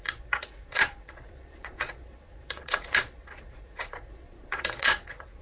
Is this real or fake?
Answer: fake